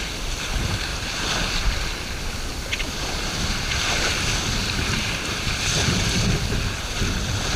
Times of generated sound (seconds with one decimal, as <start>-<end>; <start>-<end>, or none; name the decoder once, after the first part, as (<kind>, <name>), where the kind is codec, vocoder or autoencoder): 0.9-1.5 (vocoder, BigVGAN v2); 2.5-6.0